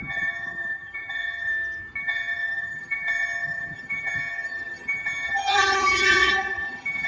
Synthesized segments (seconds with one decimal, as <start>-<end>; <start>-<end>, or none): 0.0-1.5; 2.0-7.1